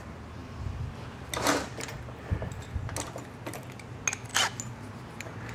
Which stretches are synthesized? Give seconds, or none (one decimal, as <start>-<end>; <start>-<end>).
none